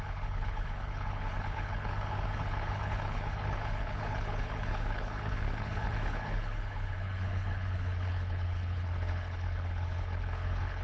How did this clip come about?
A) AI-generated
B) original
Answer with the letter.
A